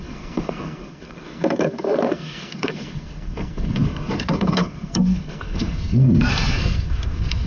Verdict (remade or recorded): remade